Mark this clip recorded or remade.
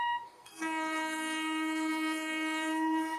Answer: remade